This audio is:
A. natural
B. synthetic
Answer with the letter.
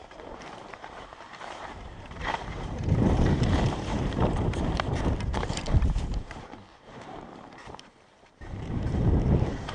B